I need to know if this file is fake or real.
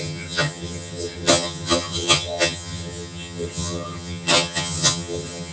fake